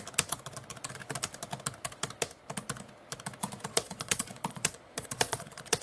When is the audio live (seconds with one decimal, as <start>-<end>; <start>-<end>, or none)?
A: 0.0-3.7